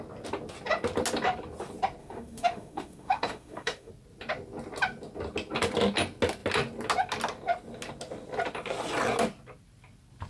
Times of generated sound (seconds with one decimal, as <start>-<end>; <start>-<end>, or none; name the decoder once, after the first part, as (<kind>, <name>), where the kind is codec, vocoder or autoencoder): 2.0-3.9 (autoencoder, DAC-VAE)

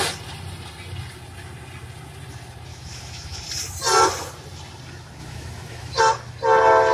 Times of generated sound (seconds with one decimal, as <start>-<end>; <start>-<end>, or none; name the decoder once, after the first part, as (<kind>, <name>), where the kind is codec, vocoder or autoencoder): 2.7-3.4 (autoencoder, DAC-VAE); 5.2-6.0

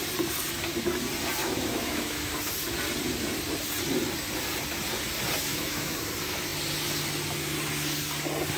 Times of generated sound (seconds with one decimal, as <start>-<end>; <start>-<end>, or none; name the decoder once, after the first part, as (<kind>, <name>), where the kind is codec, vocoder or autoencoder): 1.4-2.3 (autoencoder, DAC-VAE); 5.5-6.0